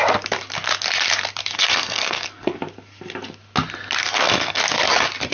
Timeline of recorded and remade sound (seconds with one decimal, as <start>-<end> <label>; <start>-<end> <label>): 0.0-1.4 recorded; 1.4-2.6 remade; 2.6-4.0 recorded; 4.0-4.6 remade; 4.6-5.3 recorded